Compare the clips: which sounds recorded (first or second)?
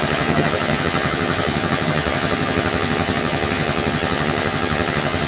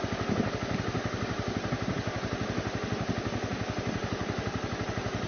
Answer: second